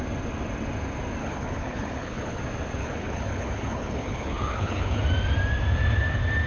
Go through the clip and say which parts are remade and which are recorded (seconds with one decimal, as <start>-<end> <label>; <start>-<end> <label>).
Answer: 0.0-1.2 recorded; 1.2-2.4 remade; 2.4-2.8 recorded; 2.8-5.0 remade; 5.0-6.5 recorded